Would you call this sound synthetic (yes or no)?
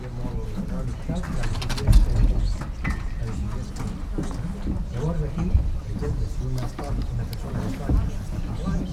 no